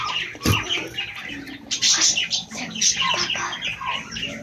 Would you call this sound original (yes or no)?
yes